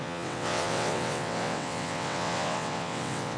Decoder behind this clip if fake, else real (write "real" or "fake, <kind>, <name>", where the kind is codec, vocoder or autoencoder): fake, vocoder, WaveNeXt